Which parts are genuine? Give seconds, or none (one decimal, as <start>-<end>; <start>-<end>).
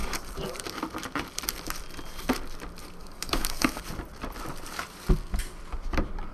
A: 0.0-3.0; 3.8-6.3